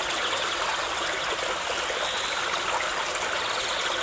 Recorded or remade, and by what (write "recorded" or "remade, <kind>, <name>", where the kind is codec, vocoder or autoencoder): recorded